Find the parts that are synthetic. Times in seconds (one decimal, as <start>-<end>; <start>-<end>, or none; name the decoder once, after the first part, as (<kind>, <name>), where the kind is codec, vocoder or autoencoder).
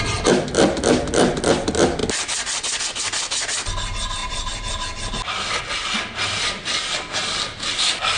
none